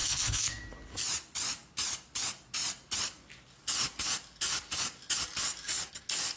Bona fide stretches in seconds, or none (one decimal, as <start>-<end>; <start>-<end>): 0.6-6.4